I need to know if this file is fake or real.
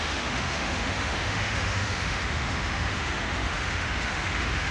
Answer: fake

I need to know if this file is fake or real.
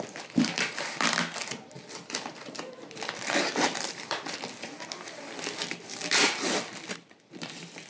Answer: fake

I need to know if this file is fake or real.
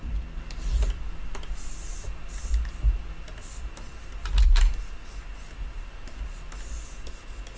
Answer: real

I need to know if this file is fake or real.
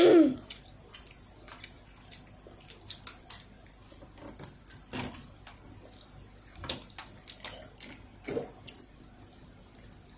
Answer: real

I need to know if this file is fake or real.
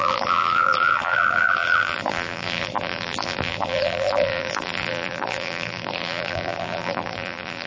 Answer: fake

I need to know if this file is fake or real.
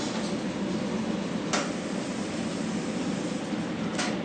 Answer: real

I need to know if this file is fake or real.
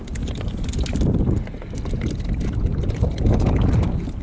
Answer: real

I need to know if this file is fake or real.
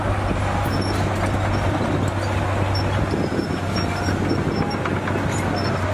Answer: real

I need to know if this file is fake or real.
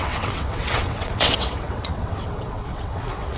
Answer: fake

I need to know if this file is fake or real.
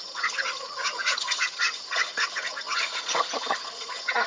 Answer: fake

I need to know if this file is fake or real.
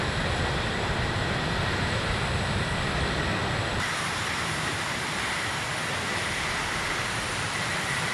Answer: fake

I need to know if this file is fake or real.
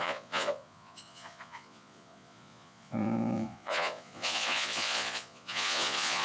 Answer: fake